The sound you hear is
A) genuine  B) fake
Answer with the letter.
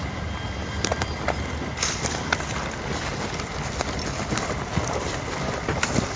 B